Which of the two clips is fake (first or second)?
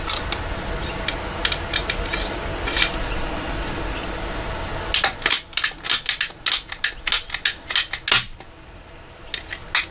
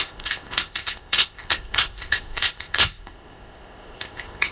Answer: second